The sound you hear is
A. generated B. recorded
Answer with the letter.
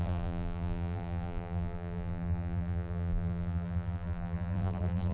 A